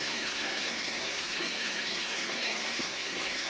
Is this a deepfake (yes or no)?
yes